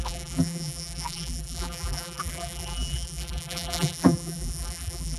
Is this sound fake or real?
fake